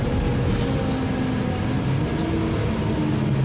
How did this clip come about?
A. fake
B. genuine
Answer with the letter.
B